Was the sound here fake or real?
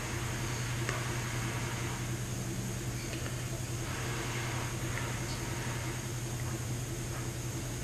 real